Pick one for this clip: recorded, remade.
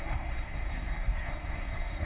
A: remade